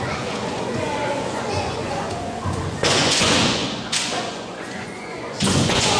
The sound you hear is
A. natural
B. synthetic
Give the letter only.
B